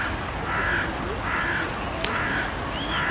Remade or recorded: recorded